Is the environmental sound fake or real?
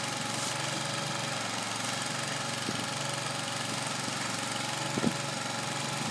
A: real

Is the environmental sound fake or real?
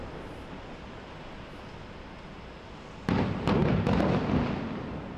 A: real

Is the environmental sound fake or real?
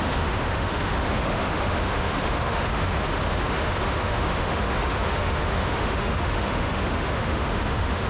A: fake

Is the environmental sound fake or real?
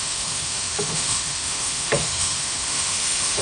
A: fake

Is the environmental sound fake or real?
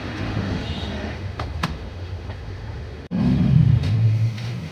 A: fake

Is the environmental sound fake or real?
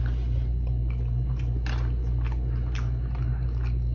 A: real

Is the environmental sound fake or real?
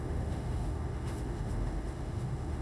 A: fake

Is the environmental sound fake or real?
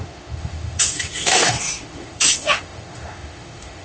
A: fake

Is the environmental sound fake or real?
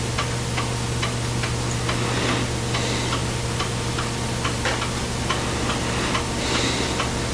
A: real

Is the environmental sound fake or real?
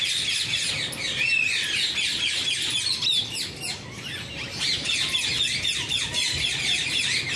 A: real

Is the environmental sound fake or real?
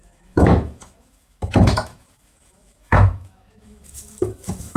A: fake